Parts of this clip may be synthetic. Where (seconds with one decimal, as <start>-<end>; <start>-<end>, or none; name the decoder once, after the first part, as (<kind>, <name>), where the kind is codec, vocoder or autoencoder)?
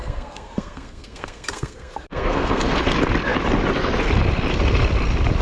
0.0-2.8 (codec, SNAC)